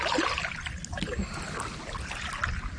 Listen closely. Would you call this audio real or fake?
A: real